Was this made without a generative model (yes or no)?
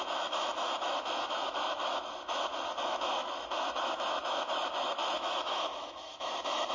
no